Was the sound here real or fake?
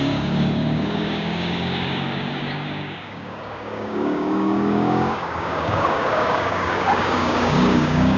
fake